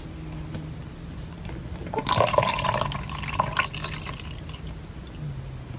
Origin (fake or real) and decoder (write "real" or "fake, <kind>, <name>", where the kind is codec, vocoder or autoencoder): real